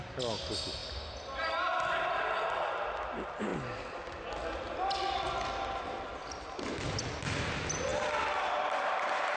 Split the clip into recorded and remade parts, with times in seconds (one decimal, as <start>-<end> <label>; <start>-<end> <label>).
0.0-9.4 recorded